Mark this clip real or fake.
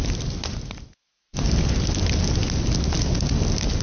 real